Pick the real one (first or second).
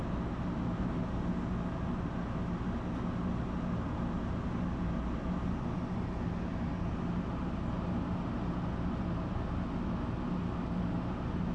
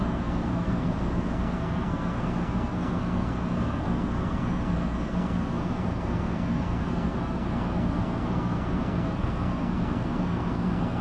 first